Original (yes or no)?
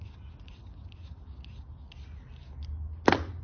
yes